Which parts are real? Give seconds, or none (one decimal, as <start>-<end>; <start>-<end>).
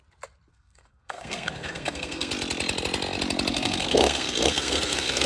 0.0-0.5; 2.3-3.5